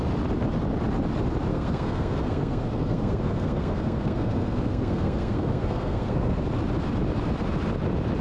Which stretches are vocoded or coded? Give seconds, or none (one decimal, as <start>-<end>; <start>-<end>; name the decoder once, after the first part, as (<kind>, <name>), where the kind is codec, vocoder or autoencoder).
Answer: 1.5-6.4 (codec, SNAC)